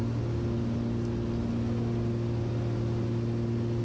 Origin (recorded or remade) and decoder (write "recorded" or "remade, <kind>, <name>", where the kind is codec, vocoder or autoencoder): recorded